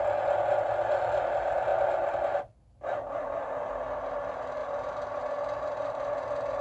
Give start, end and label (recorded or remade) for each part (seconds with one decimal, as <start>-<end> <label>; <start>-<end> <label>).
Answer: 0.0-1.7 recorded; 1.7-3.7 remade; 3.7-4.6 recorded; 4.6-5.2 remade; 5.2-6.6 recorded